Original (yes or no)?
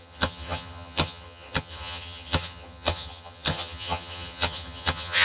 no